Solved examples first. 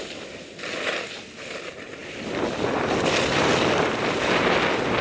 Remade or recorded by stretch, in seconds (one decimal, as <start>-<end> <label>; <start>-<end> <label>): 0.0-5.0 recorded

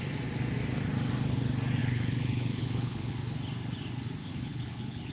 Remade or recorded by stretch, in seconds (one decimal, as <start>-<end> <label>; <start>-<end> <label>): 0.0-1.8 recorded; 1.8-3.1 remade; 3.1-4.2 recorded; 4.2-5.1 remade

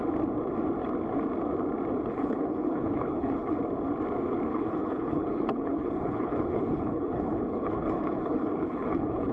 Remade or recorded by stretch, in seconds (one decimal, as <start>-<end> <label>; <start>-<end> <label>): 0.0-2.1 recorded; 2.1-3.6 remade; 3.6-4.5 recorded; 4.5-9.3 remade

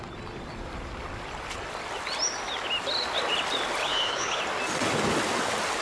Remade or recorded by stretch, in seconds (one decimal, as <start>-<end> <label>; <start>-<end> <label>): 0.0-3.8 recorded; 3.8-4.4 remade; 4.4-5.8 recorded

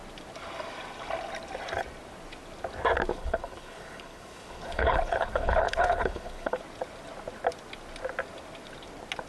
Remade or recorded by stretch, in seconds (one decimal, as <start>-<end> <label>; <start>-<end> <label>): 0.0-3.1 recorded; 3.1-6.6 remade; 6.6-9.3 recorded

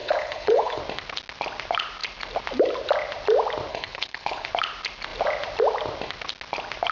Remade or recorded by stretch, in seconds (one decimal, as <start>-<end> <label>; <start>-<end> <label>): 0.0-0.8 remade; 0.8-3.7 recorded; 3.7-4.5 remade; 4.5-6.9 recorded